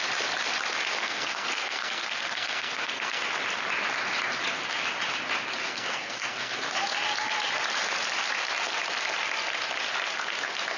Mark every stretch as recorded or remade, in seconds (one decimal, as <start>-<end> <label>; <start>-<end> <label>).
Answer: 0.0-1.0 recorded; 1.0-3.2 remade; 3.2-5.6 recorded; 5.6-6.6 remade; 6.6-10.8 recorded